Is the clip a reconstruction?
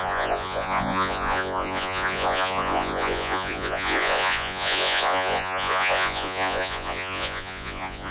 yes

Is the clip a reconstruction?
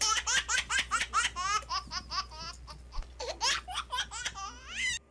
no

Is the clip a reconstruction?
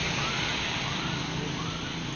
no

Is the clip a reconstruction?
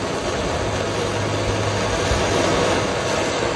no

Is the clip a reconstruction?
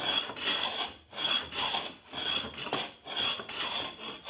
no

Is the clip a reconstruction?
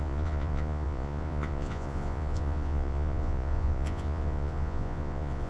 yes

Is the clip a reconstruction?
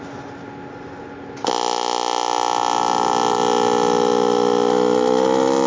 no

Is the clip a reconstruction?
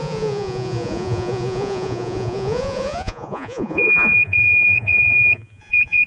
yes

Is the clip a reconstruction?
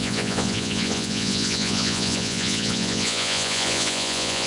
yes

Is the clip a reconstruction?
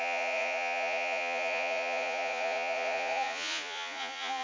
yes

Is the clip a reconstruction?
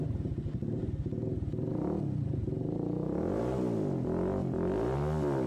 no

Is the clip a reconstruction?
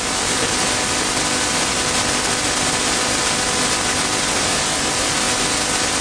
no